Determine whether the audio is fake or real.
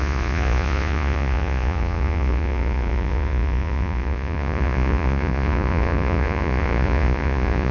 fake